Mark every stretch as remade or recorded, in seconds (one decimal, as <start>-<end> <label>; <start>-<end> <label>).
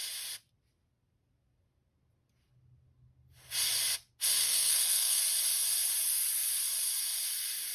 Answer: 0.0-4.4 recorded; 4.4-5.2 remade; 5.2-7.7 recorded